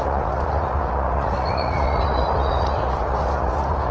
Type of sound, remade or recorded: remade